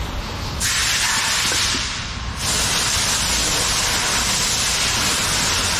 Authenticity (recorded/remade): recorded